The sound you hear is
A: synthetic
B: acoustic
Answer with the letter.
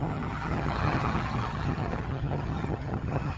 A